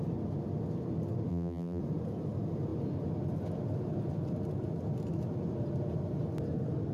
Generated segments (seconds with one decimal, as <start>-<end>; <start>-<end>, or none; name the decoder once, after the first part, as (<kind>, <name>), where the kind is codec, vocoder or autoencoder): 1.3-1.8 (vocoder, BigVGAN v2)